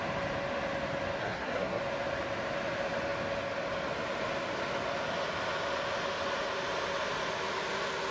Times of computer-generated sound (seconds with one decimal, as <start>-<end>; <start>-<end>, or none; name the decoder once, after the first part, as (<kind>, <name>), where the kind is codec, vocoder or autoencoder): 1.2-1.8 (codec, SNAC)